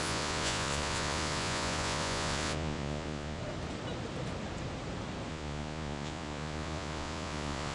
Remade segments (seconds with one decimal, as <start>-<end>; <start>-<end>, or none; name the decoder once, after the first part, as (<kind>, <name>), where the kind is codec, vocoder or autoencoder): 0.0-3.4 (vocoder, Vocos); 5.3-7.7